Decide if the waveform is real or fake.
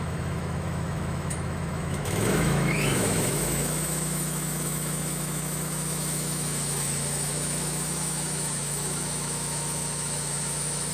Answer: fake